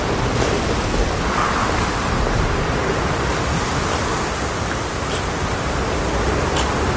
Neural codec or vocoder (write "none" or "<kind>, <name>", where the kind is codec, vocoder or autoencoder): none